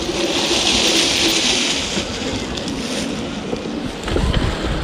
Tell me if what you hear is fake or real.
real